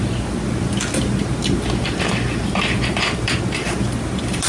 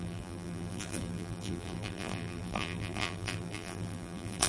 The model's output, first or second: second